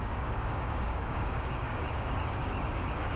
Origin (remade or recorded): remade